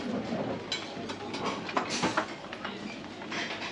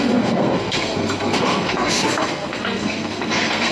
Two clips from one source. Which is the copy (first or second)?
second